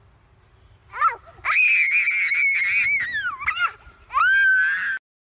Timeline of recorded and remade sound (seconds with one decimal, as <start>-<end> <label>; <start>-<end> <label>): 0.0-5.2 recorded